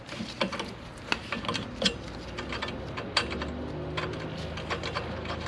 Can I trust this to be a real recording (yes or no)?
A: yes